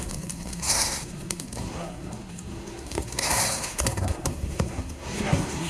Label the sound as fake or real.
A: fake